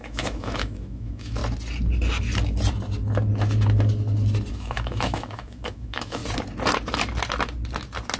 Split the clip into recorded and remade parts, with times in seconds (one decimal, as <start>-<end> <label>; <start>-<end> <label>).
0.0-1.4 remade; 1.4-4.5 recorded; 4.5-6.2 remade; 6.2-8.2 recorded